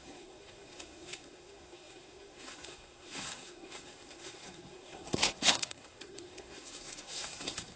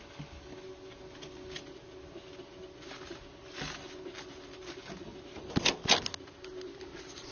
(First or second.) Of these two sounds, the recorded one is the second